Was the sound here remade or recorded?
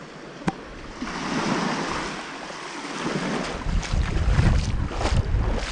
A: recorded